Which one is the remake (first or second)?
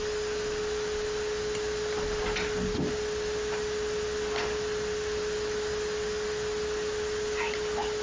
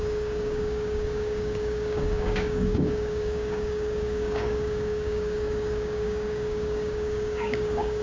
second